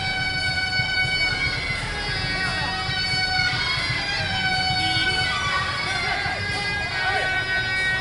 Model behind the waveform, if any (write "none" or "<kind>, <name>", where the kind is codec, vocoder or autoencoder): none